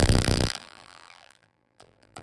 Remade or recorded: remade